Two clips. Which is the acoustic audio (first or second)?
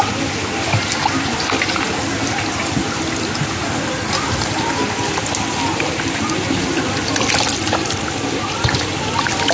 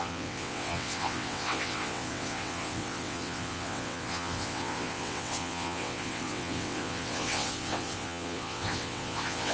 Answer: first